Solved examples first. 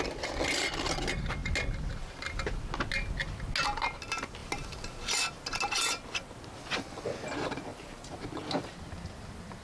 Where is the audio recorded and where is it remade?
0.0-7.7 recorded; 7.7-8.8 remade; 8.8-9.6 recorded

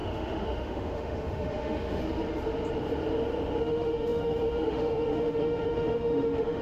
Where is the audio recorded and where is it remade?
0.0-2.0 remade; 2.0-3.6 recorded; 3.6-6.6 remade

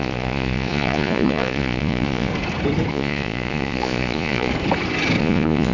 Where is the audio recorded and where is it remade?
0.0-2.3 remade; 2.3-2.9 recorded; 2.9-4.5 remade; 4.5-5.2 recorded; 5.2-5.7 remade

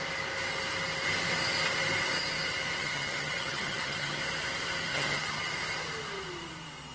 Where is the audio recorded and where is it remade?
0.0-2.8 recorded; 2.8-4.2 remade; 4.2-4.9 recorded; 4.9-5.5 remade; 5.5-6.9 recorded